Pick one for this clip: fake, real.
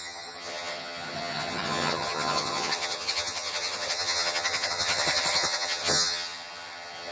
fake